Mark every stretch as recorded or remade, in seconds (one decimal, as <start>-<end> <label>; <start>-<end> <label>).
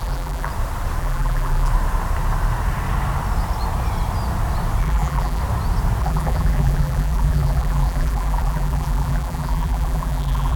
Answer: 0.0-0.5 remade; 0.5-1.0 recorded; 1.0-1.7 remade; 1.7-4.8 recorded; 4.8-5.4 remade; 5.4-6.0 recorded; 6.0-10.6 remade